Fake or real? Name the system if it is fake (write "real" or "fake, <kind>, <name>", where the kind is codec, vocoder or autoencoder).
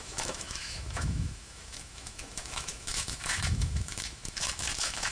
fake, autoencoder, DAC-VAE